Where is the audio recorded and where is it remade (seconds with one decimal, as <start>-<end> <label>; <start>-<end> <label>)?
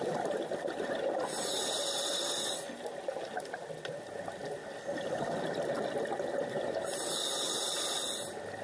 0.0-8.6 recorded